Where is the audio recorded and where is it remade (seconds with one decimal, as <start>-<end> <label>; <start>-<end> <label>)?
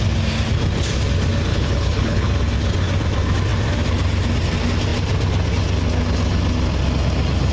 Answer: 0.0-1.5 recorded; 1.5-2.3 remade; 2.3-7.5 recorded